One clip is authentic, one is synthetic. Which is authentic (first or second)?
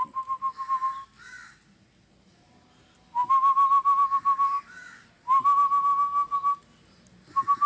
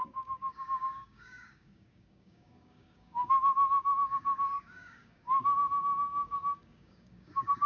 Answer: first